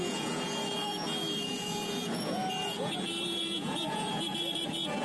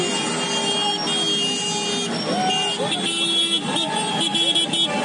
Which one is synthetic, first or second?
first